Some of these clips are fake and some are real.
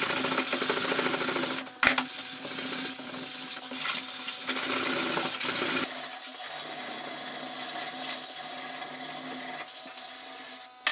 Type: real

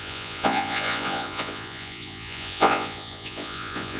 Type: fake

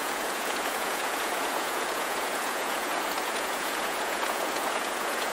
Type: fake